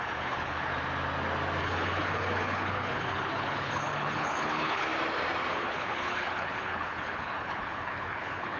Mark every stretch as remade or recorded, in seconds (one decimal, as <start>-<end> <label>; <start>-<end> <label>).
0.0-0.7 remade; 0.7-1.6 recorded; 1.6-4.9 remade; 4.9-5.5 recorded; 5.5-8.6 remade